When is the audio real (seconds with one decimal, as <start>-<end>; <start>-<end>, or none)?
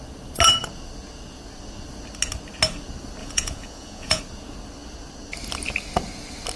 0.0-3.2; 4.2-6.6